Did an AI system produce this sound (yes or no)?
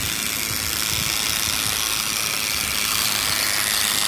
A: no